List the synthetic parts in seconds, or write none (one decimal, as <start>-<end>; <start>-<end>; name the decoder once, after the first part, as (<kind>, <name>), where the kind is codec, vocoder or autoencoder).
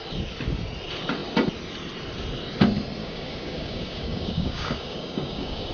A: 3.0-5.7 (codec, DAC)